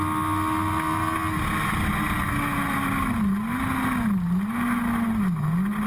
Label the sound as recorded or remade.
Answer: recorded